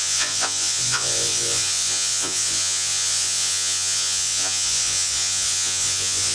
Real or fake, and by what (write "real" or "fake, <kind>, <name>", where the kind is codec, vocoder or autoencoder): fake, vocoder, Vocos